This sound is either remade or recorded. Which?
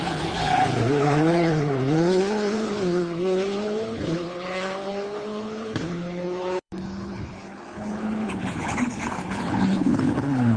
remade